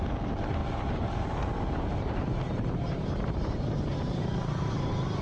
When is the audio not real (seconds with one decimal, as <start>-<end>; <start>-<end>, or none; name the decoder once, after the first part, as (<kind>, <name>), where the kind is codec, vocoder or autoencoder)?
0.0-5.2 (vocoder, BigVGAN v2)